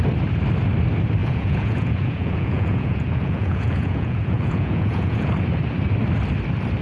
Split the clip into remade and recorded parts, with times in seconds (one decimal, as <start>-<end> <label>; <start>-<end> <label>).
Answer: 0.0-1.2 recorded; 1.2-5.3 remade; 5.3-6.8 recorded